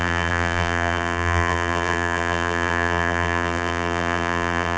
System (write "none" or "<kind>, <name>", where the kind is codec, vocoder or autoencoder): vocoder, BigVGAN v2